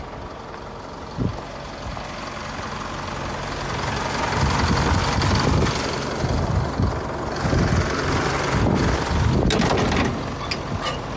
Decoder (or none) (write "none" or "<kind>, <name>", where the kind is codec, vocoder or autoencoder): none